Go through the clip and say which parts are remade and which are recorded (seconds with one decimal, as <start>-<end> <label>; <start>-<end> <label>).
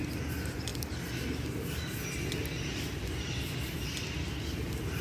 0.0-5.0 recorded